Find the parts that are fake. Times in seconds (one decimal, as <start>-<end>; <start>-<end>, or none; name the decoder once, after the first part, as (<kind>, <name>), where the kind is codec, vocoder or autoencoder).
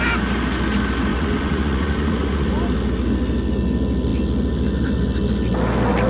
1.1-2.5 (vocoder, Vocos)